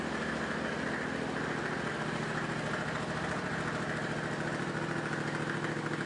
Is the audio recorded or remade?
recorded